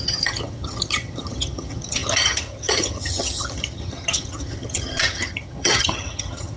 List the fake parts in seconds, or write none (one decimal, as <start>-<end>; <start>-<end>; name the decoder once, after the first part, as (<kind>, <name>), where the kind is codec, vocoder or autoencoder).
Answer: 0.0-6.6 (vocoder, HiFi-GAN)